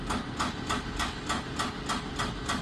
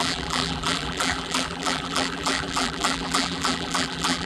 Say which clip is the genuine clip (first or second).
first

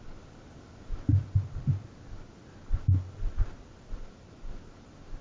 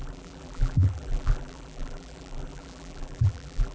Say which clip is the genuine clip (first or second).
first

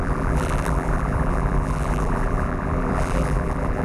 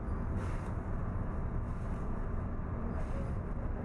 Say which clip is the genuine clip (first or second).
second